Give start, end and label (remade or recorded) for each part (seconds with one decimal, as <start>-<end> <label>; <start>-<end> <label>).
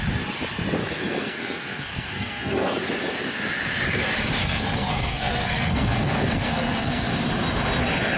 0.0-0.8 recorded; 0.8-2.8 remade; 2.8-4.4 recorded; 4.4-7.1 remade; 7.1-8.2 recorded